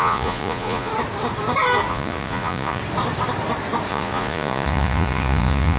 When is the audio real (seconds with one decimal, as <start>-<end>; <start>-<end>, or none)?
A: 0.9-1.9; 2.8-3.9